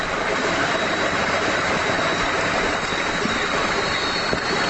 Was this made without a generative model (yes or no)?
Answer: yes